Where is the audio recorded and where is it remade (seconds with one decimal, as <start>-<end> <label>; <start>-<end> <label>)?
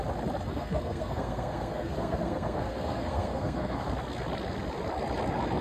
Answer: 0.0-0.5 recorded; 0.5-3.9 remade; 3.9-5.6 recorded